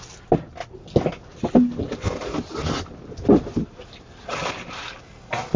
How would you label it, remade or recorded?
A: recorded